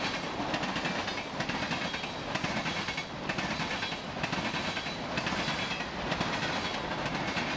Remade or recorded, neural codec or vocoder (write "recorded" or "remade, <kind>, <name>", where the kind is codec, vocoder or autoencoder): recorded